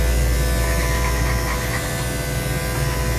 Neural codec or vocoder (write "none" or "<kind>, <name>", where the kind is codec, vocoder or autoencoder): none